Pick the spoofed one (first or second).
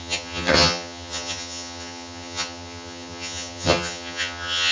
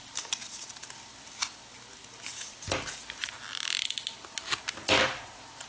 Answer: first